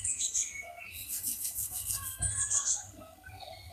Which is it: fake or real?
fake